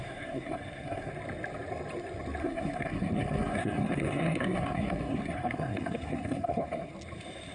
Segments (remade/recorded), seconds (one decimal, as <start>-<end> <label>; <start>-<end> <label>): 0.0-1.1 remade; 1.1-2.4 recorded; 2.4-6.9 remade; 6.9-7.5 recorded